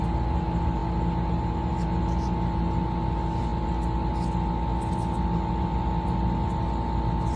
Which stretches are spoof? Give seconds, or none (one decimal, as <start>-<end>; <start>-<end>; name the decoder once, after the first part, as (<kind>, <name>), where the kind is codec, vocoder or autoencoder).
none